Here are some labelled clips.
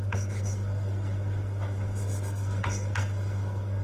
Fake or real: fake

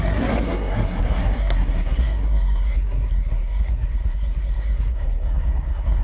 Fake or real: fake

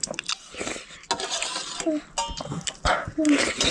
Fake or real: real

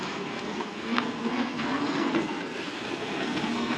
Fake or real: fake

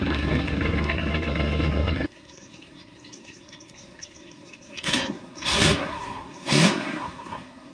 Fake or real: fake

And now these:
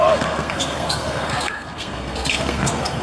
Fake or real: fake